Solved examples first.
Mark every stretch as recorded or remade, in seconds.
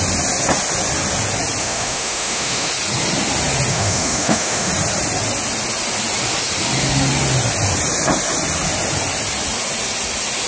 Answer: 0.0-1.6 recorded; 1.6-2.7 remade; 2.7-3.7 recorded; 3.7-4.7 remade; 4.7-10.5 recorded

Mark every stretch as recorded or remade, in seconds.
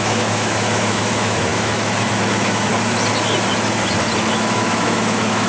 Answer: 0.0-2.7 remade; 2.7-4.3 recorded; 4.3-5.5 remade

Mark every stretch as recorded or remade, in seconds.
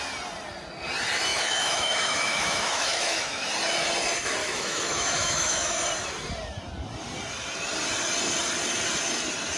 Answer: 0.0-1.3 recorded; 1.3-3.5 remade; 3.5-4.4 recorded; 4.4-5.8 remade; 5.8-9.6 recorded